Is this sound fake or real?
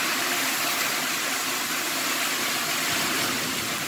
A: real